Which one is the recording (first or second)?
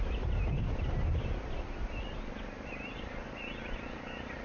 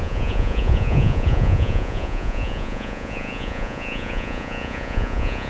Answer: first